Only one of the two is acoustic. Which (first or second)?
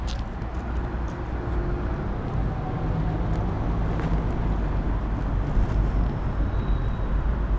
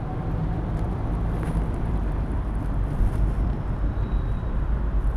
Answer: first